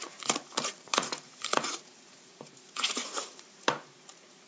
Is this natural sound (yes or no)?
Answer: no